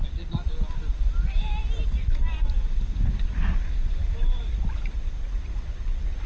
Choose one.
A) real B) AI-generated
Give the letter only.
A